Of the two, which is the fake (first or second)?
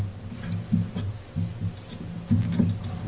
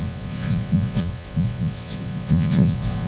second